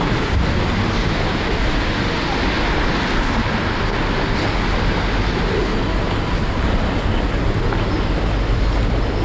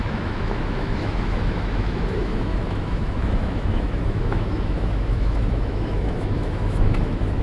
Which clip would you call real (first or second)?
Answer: first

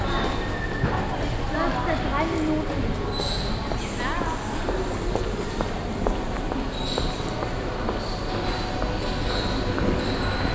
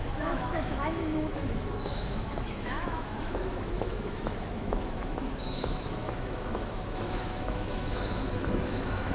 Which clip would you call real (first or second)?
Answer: first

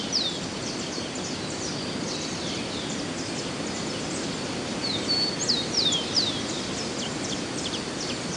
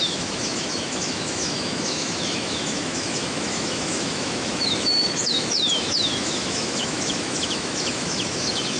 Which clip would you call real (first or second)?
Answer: first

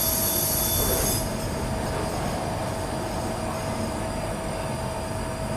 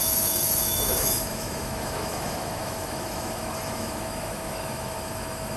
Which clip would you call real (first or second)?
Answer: first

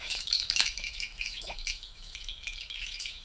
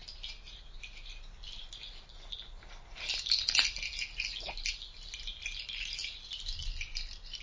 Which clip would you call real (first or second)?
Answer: second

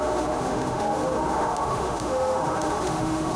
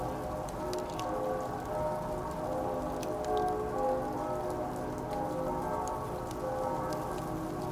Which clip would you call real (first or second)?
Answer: second